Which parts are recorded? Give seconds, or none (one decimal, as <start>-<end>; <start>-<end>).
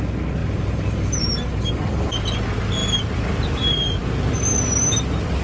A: 0.0-0.4; 1.5-5.4